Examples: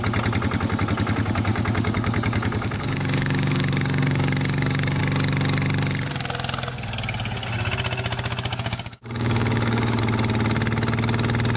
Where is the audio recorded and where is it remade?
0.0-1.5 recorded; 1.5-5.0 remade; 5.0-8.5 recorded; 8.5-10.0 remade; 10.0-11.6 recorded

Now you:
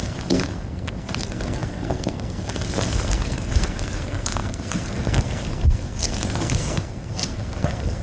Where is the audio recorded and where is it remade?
0.0-8.0 remade

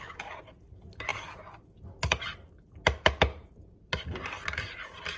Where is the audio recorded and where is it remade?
0.0-5.2 recorded

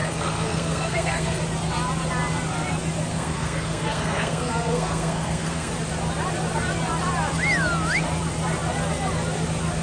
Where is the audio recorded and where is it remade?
0.0-1.4 remade; 1.4-3.1 recorded; 3.1-5.7 remade; 5.7-9.8 recorded

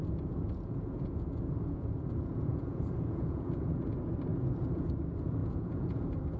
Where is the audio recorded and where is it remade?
0.0-3.8 remade; 3.8-4.3 recorded; 4.3-4.9 remade; 4.9-5.4 recorded; 5.4-6.0 remade; 6.0-6.4 recorded

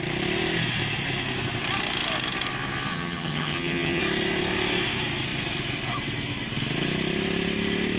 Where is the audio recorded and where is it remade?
0.0-2.9 recorded; 2.9-4.0 remade; 4.0-8.0 recorded